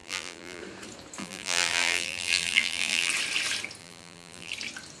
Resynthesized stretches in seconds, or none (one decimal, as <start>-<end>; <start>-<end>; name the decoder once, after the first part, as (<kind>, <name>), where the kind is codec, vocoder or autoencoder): 0.0-0.6 (vocoder, BigVGAN v2); 1.2-3.1; 3.8-4.5